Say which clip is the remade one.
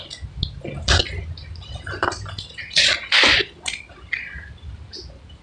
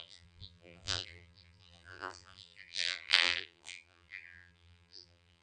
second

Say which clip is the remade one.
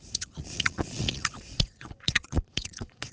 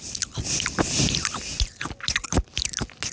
first